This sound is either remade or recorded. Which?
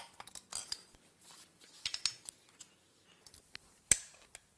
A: recorded